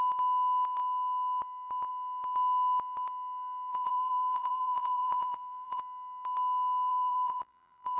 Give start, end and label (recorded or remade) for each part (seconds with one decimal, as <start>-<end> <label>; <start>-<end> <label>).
0.0-3.7 recorded; 3.7-5.8 remade; 5.8-6.9 recorded; 6.9-8.0 remade